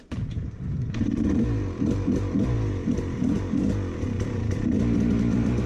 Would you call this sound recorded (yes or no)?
yes